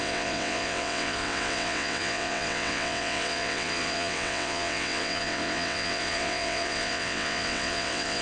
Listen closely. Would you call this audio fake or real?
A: fake